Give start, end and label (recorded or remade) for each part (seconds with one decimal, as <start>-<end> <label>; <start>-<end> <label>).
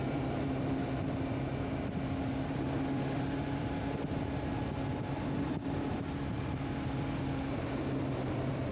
0.0-1.0 remade; 1.0-2.5 recorded; 2.5-8.7 remade